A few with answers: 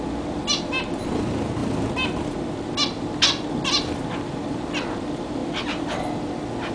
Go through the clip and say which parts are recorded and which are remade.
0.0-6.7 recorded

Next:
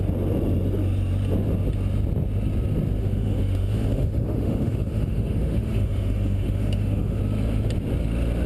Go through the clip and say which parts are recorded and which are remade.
0.0-3.0 recorded; 3.0-7.2 remade; 7.2-8.5 recorded

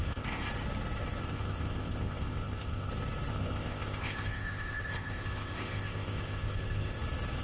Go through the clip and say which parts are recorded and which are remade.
0.0-0.5 remade; 0.5-1.2 recorded; 1.2-2.9 remade; 2.9-3.3 recorded; 3.3-7.0 remade; 7.0-7.4 recorded

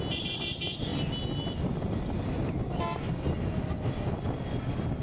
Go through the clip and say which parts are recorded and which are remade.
0.0-5.0 recorded

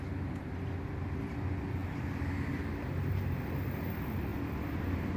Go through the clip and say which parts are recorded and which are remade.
0.0-3.0 recorded; 3.0-3.8 remade; 3.8-5.2 recorded

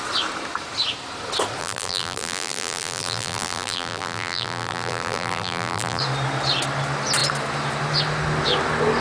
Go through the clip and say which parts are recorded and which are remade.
0.0-1.6 recorded; 1.6-6.0 remade; 6.0-9.0 recorded

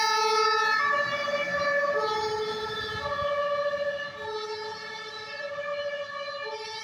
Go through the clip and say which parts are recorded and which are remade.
0.0-4.9 recorded; 4.9-5.4 remade; 5.4-6.8 recorded